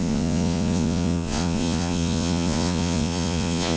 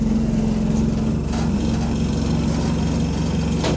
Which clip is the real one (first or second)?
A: second